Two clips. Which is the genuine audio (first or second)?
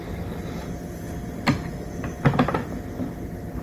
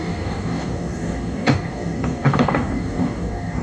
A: first